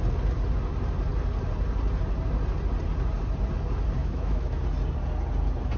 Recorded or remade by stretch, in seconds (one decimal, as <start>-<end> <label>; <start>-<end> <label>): 0.0-4.0 recorded; 4.0-4.6 remade; 4.6-5.8 recorded